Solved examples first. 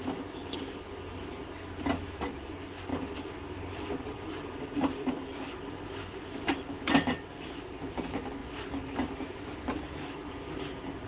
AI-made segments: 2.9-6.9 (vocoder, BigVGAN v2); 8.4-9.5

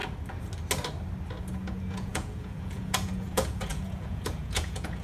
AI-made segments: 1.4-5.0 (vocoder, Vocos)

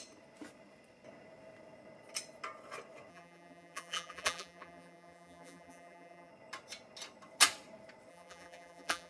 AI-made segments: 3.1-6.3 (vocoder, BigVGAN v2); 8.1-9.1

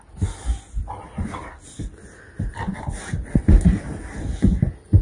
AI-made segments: none

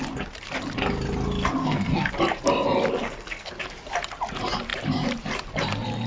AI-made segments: 1.6-2.1 (codec, SNAC); 3.0-3.5

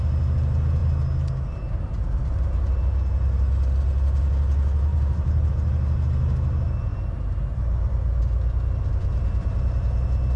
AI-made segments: 4.9-5.5 (vocoder, BigVGAN v2)